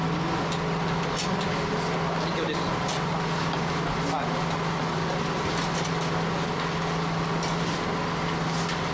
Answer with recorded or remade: recorded